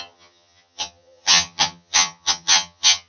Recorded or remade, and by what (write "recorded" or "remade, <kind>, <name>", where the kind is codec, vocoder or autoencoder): remade, vocoder, HiFi-GAN